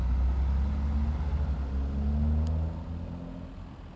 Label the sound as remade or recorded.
recorded